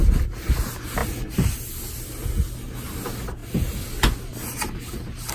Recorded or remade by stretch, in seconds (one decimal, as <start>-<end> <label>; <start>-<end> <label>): 0.0-5.3 recorded